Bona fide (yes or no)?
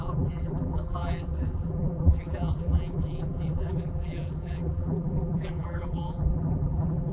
no